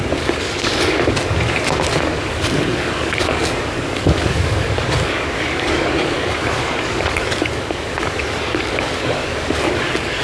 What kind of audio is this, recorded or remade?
remade